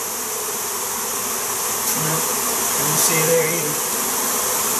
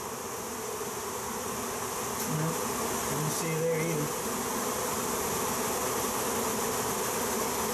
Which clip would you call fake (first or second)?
first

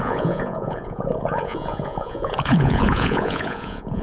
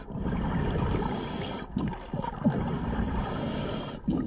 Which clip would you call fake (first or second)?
first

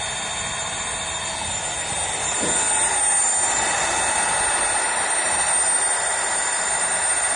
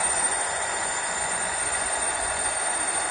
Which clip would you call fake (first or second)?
second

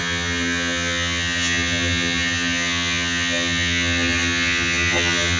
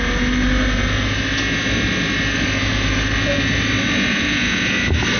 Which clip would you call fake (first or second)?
first